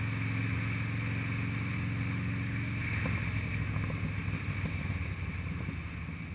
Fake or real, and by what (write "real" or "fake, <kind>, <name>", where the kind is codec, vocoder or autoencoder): real